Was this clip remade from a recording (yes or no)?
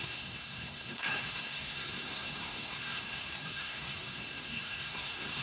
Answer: yes